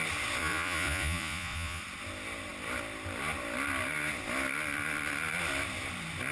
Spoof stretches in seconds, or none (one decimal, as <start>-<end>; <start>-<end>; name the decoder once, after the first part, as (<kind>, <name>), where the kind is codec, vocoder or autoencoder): 0.4-1.8 (vocoder, Vocos)